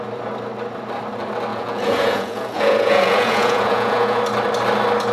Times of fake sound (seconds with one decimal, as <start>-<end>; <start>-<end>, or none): 1.5-4.2